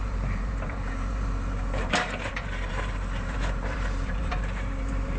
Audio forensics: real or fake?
fake